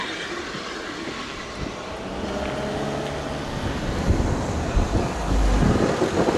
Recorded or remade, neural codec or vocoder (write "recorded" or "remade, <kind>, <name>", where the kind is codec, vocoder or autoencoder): recorded